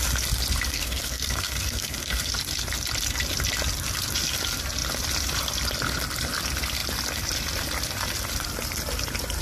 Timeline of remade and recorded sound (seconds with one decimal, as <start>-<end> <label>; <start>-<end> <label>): 0.0-0.7 recorded; 0.7-2.3 remade; 2.3-9.4 recorded